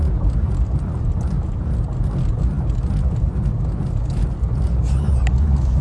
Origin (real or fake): real